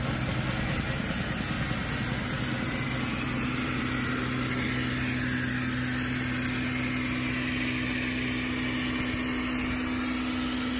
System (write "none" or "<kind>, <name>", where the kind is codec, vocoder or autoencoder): none